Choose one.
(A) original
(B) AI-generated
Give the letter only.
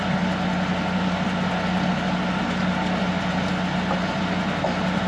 A